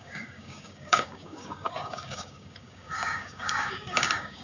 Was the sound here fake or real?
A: fake